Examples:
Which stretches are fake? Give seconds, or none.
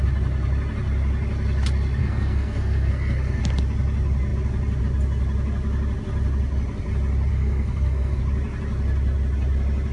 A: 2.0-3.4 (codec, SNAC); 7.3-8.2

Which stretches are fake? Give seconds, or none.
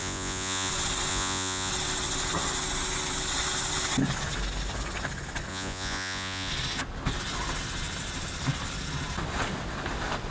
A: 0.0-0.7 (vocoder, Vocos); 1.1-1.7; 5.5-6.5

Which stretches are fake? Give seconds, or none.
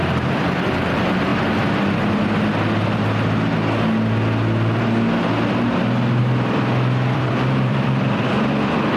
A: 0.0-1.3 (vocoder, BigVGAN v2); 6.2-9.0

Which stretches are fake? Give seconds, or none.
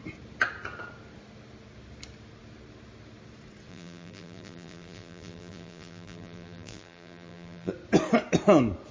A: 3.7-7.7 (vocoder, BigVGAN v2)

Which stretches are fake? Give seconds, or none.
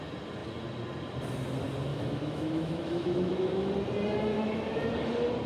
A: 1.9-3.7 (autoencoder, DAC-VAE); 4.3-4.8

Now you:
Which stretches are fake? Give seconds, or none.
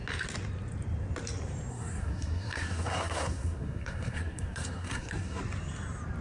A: 1.7-5.4 (codec, SNAC)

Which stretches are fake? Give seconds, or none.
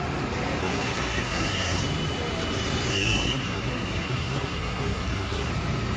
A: 0.6-1.8 (codec, SNAC); 2.9-5.5